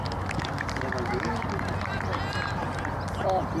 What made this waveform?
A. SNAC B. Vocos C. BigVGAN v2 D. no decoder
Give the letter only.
D